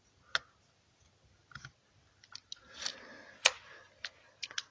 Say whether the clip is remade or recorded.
recorded